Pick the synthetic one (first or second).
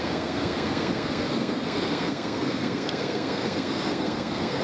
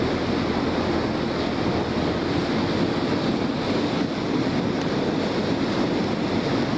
first